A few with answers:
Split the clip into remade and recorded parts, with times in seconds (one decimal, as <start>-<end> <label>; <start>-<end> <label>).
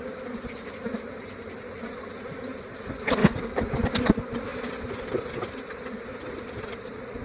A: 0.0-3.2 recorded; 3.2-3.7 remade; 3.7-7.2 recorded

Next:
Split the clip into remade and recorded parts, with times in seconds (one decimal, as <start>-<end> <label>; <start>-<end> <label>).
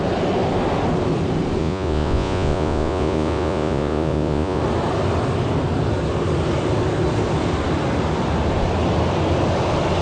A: 0.0-1.6 recorded; 1.6-4.6 remade; 4.6-10.0 recorded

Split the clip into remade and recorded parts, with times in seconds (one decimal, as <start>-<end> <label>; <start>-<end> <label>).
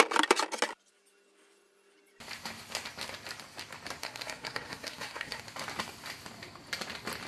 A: 0.0-4.0 recorded; 4.0-5.4 remade; 5.4-7.3 recorded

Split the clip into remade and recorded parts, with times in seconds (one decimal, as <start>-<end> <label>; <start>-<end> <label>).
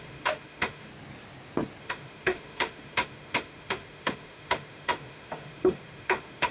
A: 0.0-0.9 remade; 0.9-1.8 recorded; 1.8-6.5 remade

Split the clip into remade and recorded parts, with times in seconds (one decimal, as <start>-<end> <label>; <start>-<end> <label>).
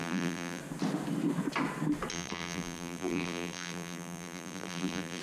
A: 0.0-0.6 remade; 0.6-2.1 recorded; 2.1-5.2 remade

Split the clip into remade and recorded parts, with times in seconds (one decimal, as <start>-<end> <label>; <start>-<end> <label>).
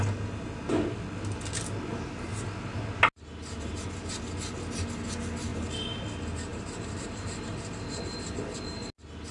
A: 0.0-5.5 recorded; 5.5-6.0 remade; 6.0-6.5 recorded; 6.5-7.5 remade; 7.5-9.3 recorded